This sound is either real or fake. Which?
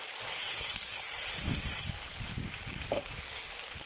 fake